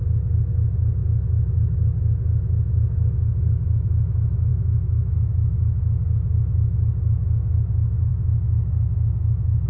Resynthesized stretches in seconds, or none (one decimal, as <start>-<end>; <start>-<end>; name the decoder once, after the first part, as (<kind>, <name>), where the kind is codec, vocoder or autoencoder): 4.5-5.3 (autoencoder, DAC-VAE); 8.1-9.7